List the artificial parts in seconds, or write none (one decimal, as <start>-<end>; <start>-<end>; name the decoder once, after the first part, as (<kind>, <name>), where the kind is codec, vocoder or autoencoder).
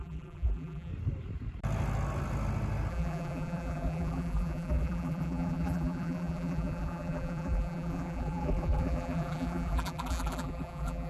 0.0-0.9 (vocoder, BigVGAN v2); 2.9-11.1